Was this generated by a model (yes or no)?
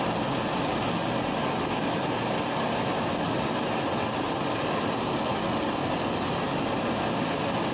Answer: no